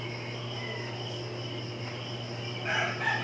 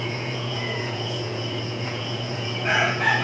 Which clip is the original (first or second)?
first